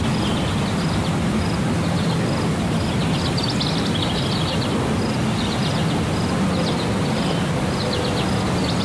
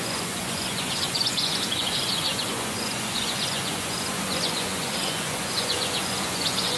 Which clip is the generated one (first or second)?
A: second